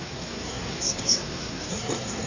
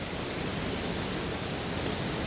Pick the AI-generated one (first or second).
first